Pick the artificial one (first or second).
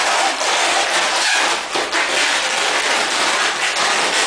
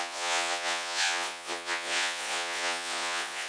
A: second